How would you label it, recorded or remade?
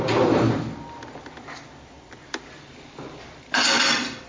remade